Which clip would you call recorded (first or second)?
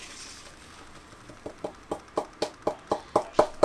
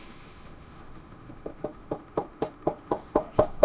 first